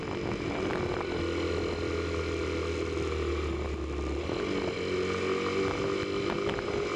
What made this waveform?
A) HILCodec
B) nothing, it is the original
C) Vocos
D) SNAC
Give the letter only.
B